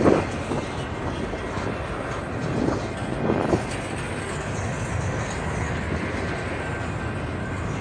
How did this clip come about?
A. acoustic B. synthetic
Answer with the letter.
A